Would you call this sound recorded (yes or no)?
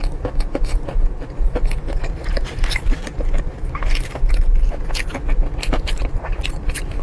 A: yes